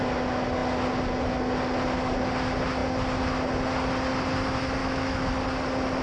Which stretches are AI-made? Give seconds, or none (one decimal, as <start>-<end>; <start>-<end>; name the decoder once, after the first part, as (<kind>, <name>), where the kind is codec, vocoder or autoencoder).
4.8-5.3 (autoencoder, DAC-VAE)